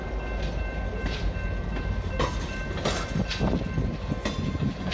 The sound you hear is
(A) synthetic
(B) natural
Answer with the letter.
B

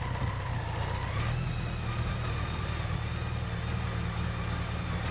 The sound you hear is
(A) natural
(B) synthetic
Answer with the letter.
A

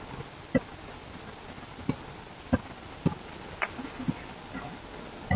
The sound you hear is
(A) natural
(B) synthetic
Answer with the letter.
A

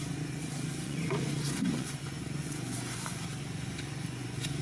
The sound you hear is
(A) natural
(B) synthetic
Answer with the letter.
B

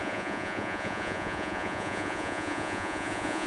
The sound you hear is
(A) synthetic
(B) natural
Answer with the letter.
A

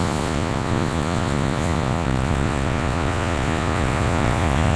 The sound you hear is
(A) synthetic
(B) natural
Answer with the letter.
A